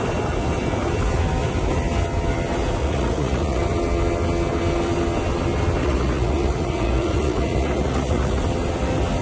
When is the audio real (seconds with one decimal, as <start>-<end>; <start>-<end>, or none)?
0.0-2.8; 3.6-5.8; 8.4-9.2